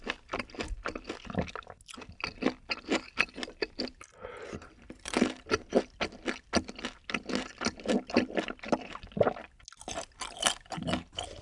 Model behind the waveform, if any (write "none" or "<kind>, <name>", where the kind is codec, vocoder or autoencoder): none